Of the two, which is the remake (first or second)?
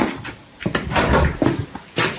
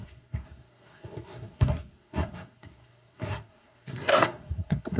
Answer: second